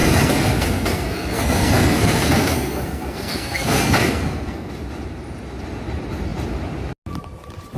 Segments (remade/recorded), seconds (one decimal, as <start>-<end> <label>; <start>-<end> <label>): 0.0-4.7 remade; 4.7-7.8 recorded